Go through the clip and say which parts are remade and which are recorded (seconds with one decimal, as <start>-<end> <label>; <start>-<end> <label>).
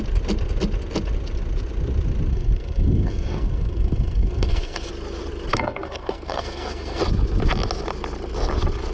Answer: 0.0-2.3 recorded; 2.3-4.9 remade; 4.9-5.5 recorded; 5.5-7.0 remade; 7.0-8.9 recorded